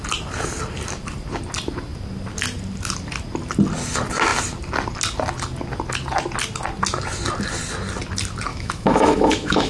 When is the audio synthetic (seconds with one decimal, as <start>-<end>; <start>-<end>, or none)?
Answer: 8.5-9.7